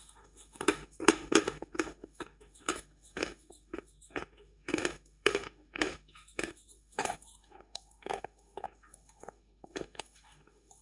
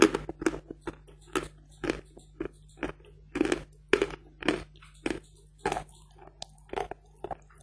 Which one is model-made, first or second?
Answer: first